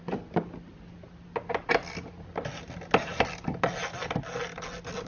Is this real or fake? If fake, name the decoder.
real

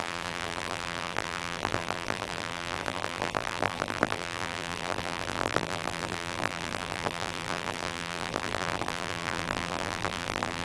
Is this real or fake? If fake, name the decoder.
fake, vocoder, BigVGAN v2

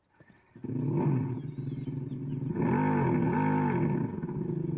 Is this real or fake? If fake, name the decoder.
real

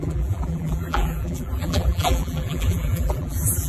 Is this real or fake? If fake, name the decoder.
fake, vocoder, BigVGAN v2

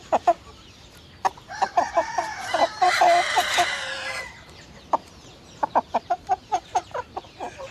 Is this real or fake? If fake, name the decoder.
fake, vocoder, BigVGAN v2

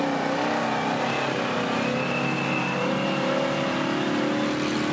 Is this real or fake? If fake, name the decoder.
real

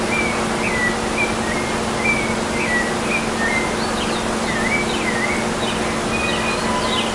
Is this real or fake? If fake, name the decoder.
real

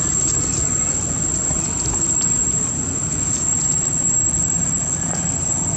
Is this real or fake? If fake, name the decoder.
real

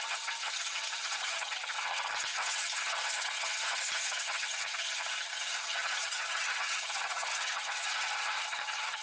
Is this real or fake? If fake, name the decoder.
fake, vocoder, HiFi-GAN